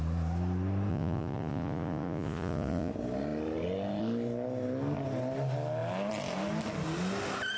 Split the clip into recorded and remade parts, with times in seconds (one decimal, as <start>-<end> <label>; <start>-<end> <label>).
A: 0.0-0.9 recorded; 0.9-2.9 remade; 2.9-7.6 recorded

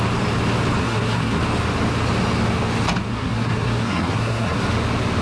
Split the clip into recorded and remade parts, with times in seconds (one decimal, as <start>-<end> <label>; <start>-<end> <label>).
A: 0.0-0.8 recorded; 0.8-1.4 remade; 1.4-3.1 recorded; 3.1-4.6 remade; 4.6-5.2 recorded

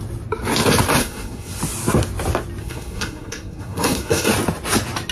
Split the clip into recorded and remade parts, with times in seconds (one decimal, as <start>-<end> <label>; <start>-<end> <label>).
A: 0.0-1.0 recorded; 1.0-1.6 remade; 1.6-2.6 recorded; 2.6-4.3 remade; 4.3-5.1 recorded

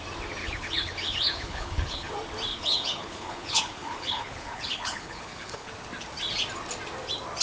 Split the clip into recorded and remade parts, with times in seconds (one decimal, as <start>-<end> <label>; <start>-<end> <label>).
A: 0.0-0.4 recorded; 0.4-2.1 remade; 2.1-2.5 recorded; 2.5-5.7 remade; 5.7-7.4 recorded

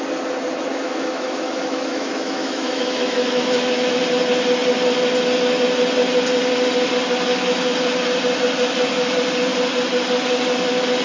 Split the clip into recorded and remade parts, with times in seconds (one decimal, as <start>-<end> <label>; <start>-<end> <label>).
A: 0.0-0.7 recorded; 0.7-4.0 remade; 4.0-11.0 recorded